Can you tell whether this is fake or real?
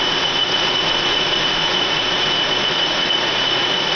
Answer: fake